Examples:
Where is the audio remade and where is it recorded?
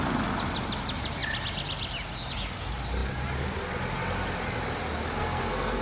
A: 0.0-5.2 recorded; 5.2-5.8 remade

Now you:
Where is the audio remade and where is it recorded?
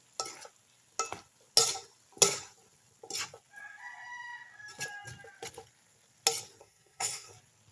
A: 0.0-6.6 recorded; 6.6-7.3 remade; 7.3-7.7 recorded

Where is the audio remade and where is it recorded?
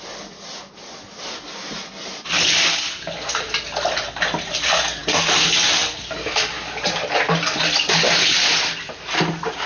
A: 0.0-9.7 recorded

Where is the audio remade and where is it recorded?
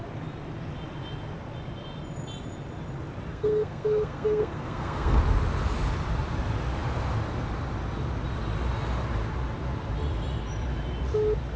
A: 0.0-3.3 recorded; 3.3-5.2 remade; 5.2-11.6 recorded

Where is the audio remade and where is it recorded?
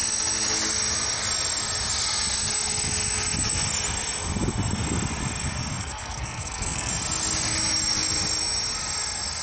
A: 0.0-5.8 recorded; 5.8-6.9 remade; 6.9-9.4 recorded